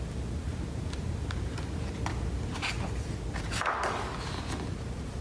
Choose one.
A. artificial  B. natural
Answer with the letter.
B